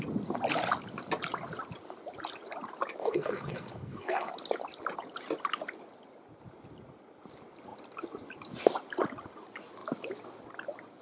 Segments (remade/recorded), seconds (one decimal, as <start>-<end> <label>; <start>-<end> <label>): 0.0-3.0 recorded; 3.0-4.3 remade; 4.3-11.0 recorded